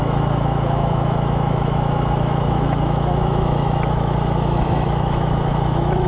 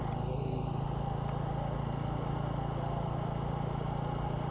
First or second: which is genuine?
second